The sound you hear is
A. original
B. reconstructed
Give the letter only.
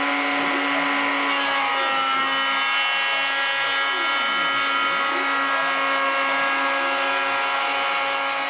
A